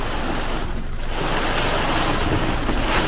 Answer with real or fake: real